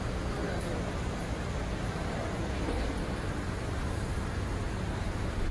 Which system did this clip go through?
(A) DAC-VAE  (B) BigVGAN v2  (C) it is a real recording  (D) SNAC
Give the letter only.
B